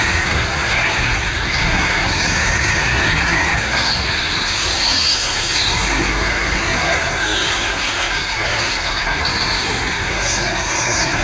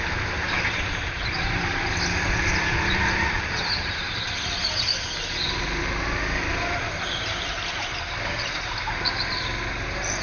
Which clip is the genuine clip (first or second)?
second